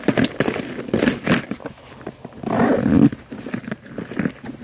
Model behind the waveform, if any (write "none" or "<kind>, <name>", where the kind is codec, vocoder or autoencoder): none